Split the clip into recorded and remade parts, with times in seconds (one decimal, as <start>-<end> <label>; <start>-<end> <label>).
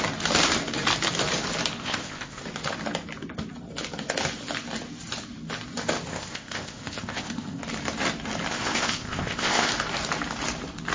0.0-1.8 recorded; 1.8-2.4 remade; 2.4-6.1 recorded; 6.1-7.6 remade; 7.6-8.5 recorded; 8.5-9.7 remade; 9.7-10.9 recorded